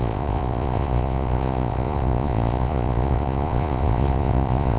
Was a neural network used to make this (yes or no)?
yes